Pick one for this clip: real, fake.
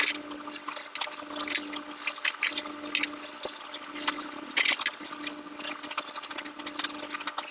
real